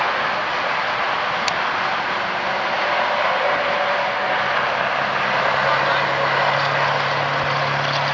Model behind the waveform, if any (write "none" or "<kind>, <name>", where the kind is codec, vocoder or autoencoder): none